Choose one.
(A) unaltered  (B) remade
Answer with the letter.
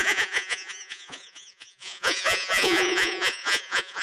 B